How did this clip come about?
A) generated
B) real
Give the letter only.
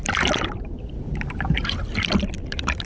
B